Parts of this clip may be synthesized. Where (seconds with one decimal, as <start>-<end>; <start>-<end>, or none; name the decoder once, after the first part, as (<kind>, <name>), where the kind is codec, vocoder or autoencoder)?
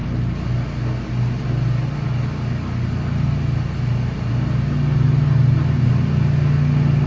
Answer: none